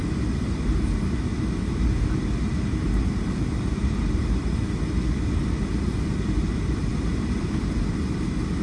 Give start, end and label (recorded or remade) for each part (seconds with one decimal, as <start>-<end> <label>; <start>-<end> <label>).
0.0-1.3 recorded; 1.3-4.6 remade; 4.6-6.9 recorded; 6.9-7.8 remade; 7.8-8.6 recorded